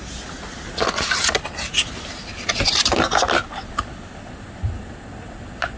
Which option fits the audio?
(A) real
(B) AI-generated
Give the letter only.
A